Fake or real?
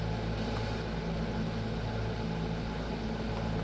real